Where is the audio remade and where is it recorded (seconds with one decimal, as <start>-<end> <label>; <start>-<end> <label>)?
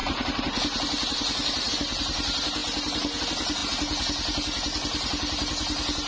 0.0-6.1 recorded